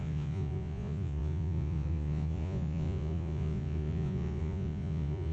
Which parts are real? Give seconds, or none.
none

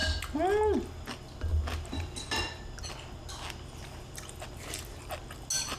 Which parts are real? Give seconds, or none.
0.0-5.8

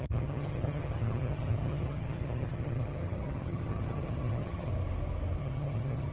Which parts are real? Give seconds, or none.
4.7-5.4

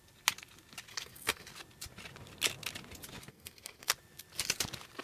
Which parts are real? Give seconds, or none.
0.0-0.9; 1.5-3.3; 3.9-5.0

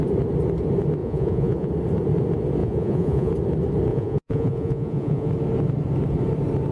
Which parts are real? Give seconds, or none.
0.0-1.0; 1.7-2.6; 3.3-3.9; 5.3-6.7